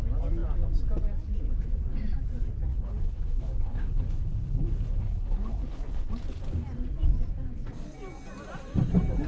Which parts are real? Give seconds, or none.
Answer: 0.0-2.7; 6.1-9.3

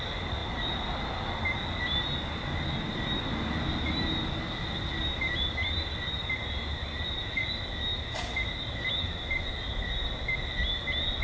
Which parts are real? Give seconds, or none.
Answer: 0.0-11.2

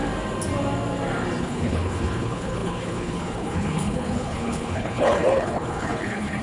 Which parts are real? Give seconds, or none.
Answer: 0.0-1.4

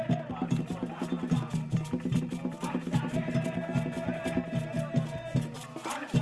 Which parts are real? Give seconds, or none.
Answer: 0.0-6.2